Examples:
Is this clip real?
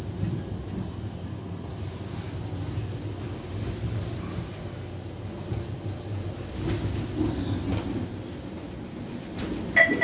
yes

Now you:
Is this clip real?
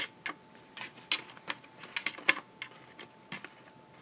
yes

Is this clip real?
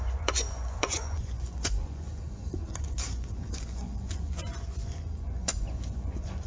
no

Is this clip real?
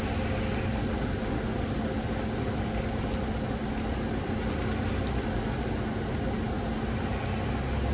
yes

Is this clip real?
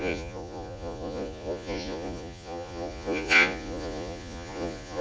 no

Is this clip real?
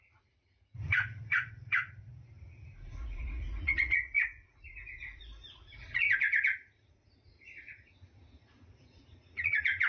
no